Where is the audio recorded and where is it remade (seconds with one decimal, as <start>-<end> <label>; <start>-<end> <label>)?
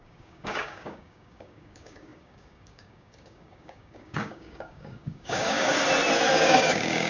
0.0-5.7 remade; 5.7-6.3 recorded; 6.3-7.1 remade